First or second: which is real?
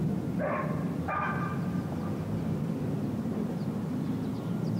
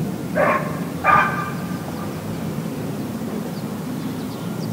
first